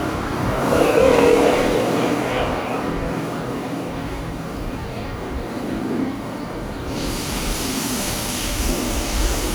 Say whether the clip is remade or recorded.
remade